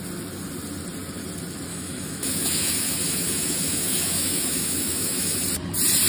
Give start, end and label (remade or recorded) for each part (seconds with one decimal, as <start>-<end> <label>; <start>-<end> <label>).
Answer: 0.0-1.7 recorded; 1.7-5.4 remade; 5.4-6.1 recorded